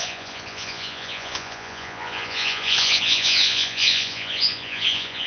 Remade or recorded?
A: remade